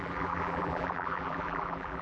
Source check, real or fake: fake